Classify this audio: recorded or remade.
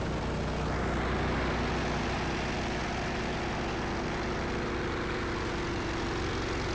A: recorded